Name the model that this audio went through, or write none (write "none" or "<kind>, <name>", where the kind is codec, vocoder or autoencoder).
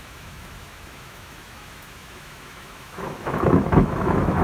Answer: autoencoder, DAC-VAE